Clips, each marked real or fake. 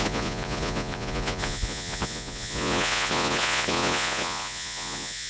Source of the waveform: fake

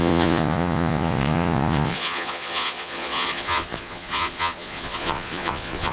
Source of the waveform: fake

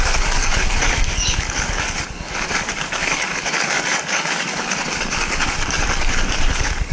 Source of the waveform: fake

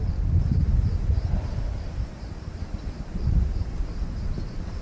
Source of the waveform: fake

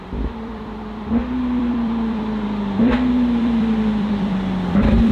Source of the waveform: fake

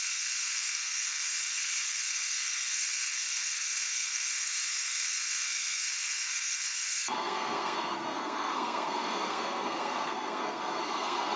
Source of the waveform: fake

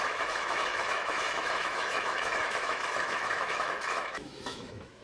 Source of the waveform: fake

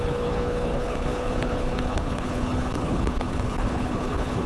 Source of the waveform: fake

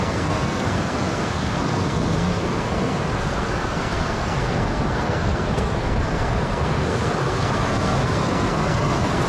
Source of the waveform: fake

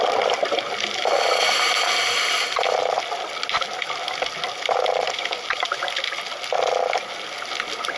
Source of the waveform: real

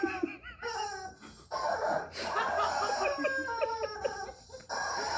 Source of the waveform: real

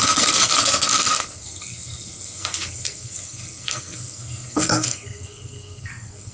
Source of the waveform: fake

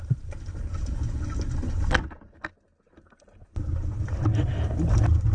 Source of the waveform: real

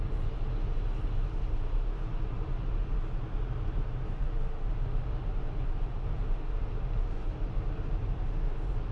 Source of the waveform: real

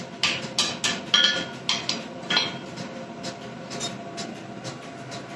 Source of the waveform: real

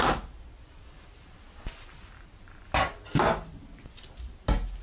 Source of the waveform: real